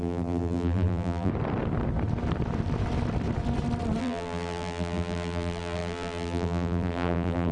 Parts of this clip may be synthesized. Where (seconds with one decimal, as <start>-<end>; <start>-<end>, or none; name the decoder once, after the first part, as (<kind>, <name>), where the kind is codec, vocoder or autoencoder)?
0.0-1.3 (vocoder, BigVGAN v2); 4.0-7.5